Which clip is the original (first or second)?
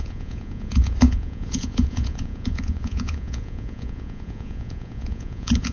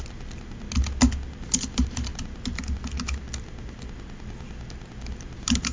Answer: second